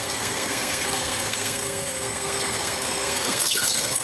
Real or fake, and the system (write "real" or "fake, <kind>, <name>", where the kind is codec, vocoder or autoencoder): fake, codec, SNAC